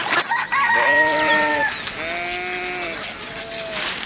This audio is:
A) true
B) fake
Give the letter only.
A